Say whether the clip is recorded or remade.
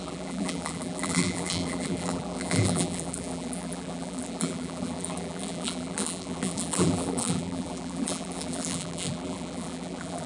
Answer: remade